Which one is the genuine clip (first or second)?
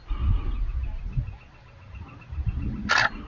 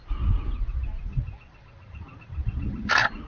first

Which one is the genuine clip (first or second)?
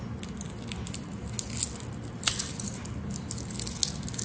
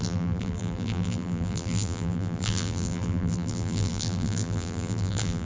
first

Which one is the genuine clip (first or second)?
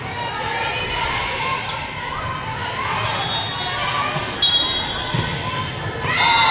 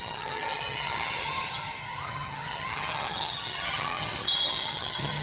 first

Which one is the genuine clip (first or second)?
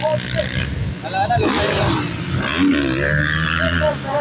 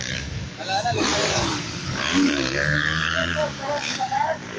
first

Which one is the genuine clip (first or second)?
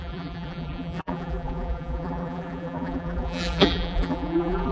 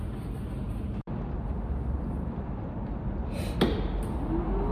second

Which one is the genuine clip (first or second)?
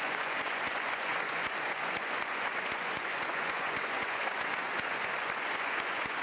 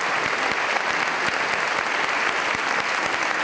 second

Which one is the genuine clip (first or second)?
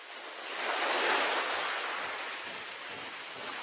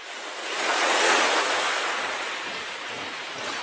first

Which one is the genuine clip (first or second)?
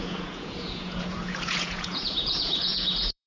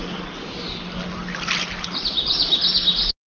second